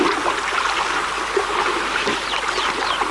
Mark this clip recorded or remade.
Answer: recorded